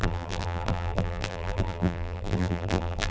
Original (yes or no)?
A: no